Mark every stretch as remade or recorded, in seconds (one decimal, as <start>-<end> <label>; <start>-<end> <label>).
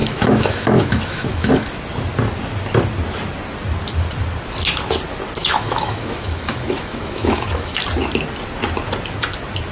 0.0-1.5 remade; 1.5-5.4 recorded; 5.4-7.8 remade; 7.8-9.7 recorded